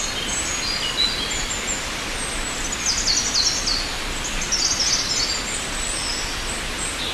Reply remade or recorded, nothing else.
recorded